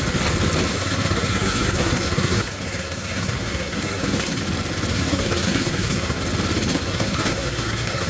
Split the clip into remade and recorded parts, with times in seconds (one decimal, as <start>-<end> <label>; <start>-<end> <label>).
0.0-0.7 recorded; 0.7-4.4 remade; 4.4-4.9 recorded; 4.9-6.2 remade; 6.2-6.7 recorded; 6.7-8.1 remade